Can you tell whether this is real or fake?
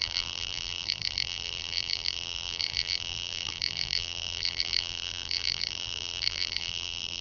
fake